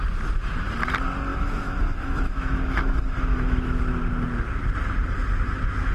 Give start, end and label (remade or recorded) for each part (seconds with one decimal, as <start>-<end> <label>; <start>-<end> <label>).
0.0-1.3 recorded; 1.3-3.8 remade; 3.8-5.9 recorded